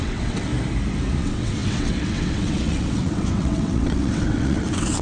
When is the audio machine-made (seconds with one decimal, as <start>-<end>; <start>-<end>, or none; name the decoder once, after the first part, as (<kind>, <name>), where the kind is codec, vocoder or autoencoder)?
0.0-0.5 (vocoder, WaveNeXt); 1.2-5.0